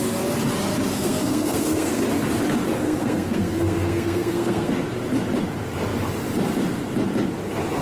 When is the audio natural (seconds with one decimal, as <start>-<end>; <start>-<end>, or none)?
0.0-0.9; 2.0-2.8; 4.7-7.8

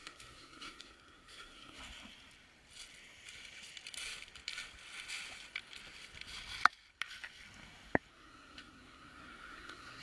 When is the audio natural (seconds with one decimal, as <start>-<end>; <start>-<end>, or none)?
1.8-8.1

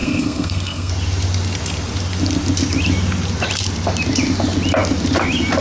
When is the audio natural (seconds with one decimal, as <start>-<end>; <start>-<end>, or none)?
0.9-5.6

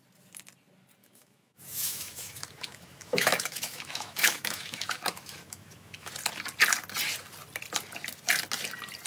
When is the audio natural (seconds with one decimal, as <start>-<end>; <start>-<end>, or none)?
0.0-1.0; 6.1-9.1

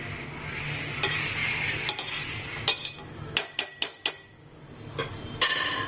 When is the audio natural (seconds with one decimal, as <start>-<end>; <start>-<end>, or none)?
0.0-5.9

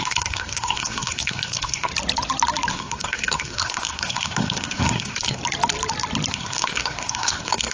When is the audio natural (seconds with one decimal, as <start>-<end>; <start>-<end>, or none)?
1.9-2.7; 5.4-6.3

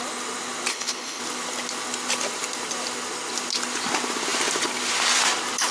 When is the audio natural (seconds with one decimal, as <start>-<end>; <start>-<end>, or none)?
0.0-0.7; 1.2-5.7

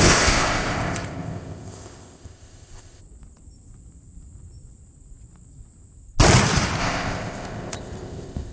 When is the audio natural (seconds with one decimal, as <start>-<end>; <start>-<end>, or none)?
3.0-6.8